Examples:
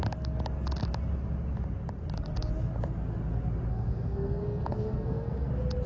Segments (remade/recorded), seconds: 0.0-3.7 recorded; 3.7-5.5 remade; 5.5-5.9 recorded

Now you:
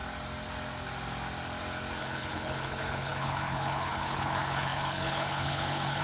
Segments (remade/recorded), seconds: 0.0-2.0 recorded; 2.0-6.0 remade

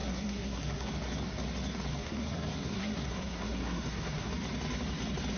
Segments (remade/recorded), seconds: 0.0-0.9 remade; 0.9-1.9 recorded; 1.9-4.3 remade; 4.3-5.4 recorded